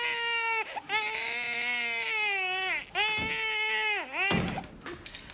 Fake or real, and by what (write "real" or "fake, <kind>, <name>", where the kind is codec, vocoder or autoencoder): real